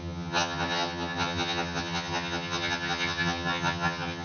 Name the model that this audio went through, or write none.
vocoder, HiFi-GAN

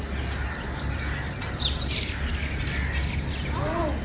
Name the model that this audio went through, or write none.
none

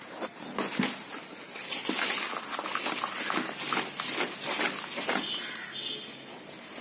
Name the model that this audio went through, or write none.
none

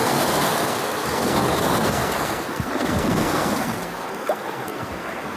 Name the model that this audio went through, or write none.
codec, SNAC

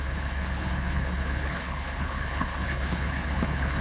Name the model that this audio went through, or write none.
codec, HILCodec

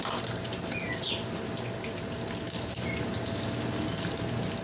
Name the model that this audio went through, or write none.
none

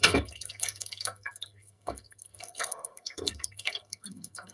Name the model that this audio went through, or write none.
codec, SNAC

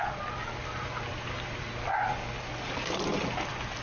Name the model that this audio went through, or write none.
none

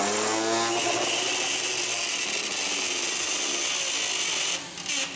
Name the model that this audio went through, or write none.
none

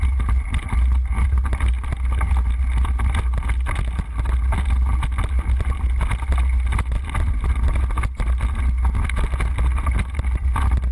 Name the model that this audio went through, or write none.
none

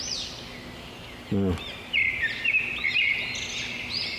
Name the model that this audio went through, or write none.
none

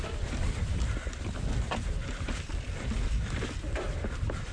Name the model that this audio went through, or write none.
none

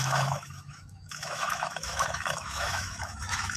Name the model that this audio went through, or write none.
autoencoder, DAC-VAE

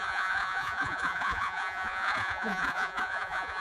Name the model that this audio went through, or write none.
vocoder, Vocos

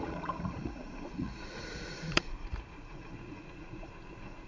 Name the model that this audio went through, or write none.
vocoder, Vocos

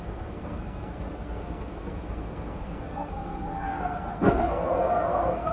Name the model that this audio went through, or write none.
codec, SNAC